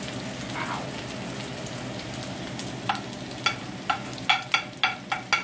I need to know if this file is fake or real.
real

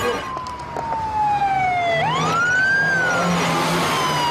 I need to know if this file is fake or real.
real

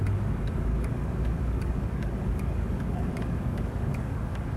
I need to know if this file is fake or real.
fake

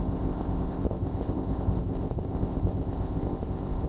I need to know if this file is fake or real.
fake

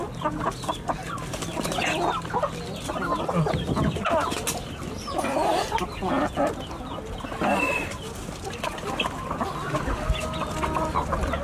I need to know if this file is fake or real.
real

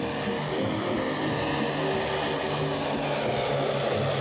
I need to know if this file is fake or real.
real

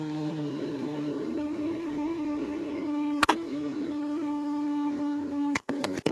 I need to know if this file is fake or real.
fake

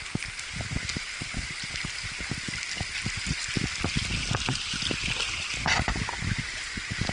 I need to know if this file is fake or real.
real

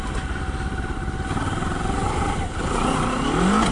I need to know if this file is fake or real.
real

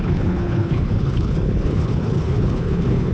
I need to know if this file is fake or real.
fake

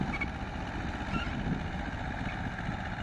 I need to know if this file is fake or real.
real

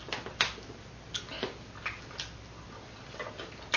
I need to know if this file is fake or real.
real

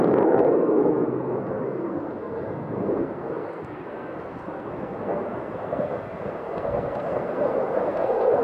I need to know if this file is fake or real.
fake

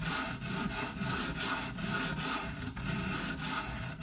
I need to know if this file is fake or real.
real